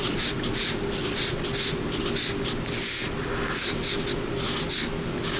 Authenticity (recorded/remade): recorded